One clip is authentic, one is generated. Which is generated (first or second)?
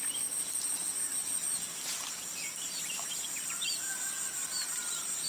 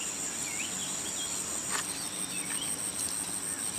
first